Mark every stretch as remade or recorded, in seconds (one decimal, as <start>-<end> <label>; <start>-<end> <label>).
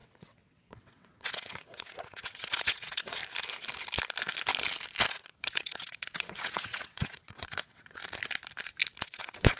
0.0-3.2 remade; 3.2-5.1 recorded; 5.1-8.0 remade; 8.0-9.0 recorded; 9.0-9.6 remade